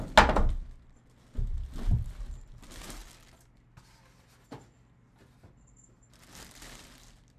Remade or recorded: recorded